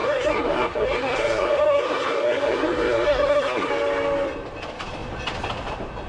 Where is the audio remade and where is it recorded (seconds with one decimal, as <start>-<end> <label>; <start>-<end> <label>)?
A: 0.0-3.7 remade; 3.7-6.1 recorded